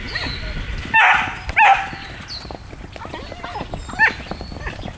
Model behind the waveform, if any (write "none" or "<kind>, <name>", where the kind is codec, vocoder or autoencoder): none